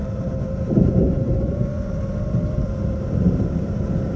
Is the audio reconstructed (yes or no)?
yes